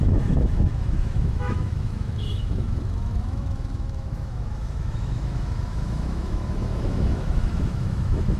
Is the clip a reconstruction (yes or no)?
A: yes